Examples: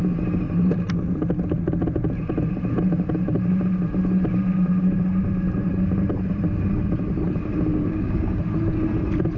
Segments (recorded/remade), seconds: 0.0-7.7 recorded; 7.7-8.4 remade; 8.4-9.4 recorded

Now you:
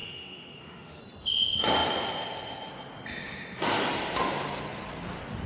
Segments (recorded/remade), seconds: 0.0-1.0 remade; 1.0-5.5 recorded

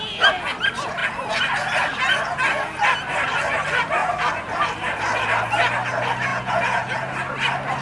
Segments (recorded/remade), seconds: 0.0-6.3 recorded; 6.3-7.0 remade; 7.0-7.8 recorded

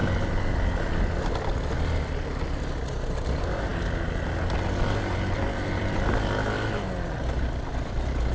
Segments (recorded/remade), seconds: 0.0-8.3 recorded

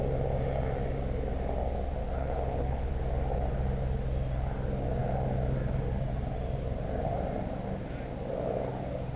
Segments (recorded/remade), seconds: 0.0-2.0 recorded; 2.0-2.9 remade; 2.9-9.2 recorded

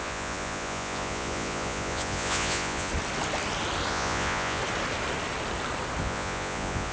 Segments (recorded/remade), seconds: 0.0-2.9 remade; 2.9-3.9 recorded; 3.9-4.6 remade; 4.6-6.0 recorded; 6.0-6.9 remade